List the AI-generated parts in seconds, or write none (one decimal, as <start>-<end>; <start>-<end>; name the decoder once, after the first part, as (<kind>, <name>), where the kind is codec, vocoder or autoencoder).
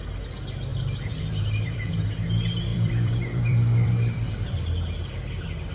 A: 0.7-2.0 (vocoder, BigVGAN v2); 2.7-5.1